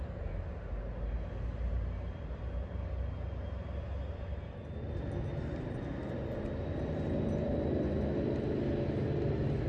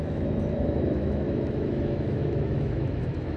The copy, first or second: second